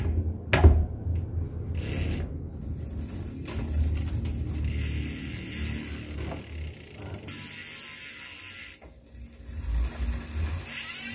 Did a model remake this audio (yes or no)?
no